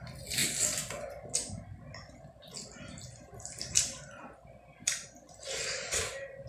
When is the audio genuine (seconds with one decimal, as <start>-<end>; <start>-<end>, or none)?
0.0-6.5